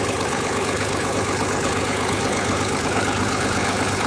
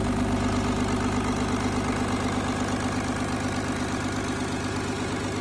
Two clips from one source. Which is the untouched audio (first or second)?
second